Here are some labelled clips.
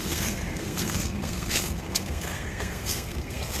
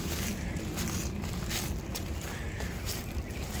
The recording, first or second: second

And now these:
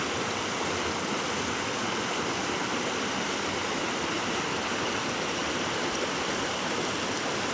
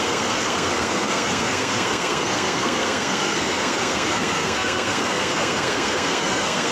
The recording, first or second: first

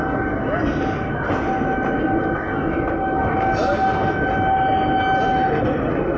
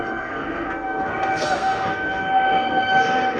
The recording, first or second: first